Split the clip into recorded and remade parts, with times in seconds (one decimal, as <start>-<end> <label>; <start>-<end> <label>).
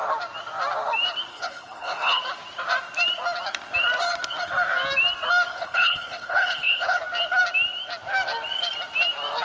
0.0-1.3 recorded; 1.3-2.2 remade; 2.2-5.5 recorded; 5.5-7.0 remade; 7.0-9.4 recorded